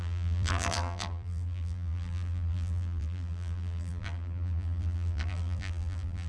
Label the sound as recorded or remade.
remade